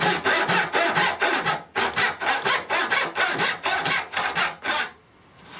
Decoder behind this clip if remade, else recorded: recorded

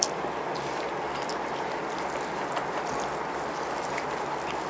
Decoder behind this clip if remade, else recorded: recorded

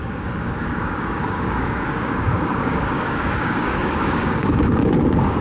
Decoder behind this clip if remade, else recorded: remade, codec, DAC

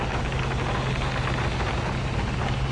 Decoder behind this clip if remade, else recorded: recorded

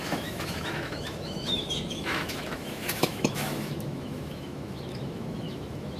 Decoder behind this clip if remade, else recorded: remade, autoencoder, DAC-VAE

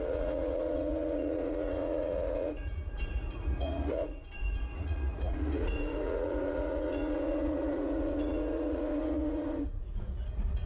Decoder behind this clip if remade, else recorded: remade, vocoder, Vocos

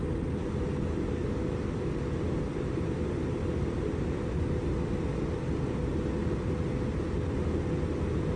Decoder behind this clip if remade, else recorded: recorded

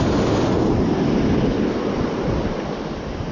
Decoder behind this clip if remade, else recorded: recorded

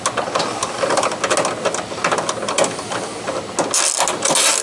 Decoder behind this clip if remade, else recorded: recorded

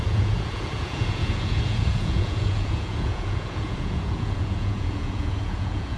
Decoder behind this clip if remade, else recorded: remade, vocoder, Vocos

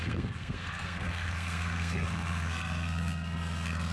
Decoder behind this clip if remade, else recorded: remade, codec, SNAC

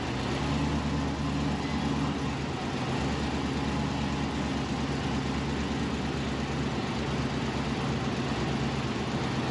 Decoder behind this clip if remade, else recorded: recorded